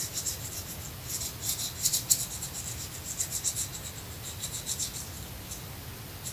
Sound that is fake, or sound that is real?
real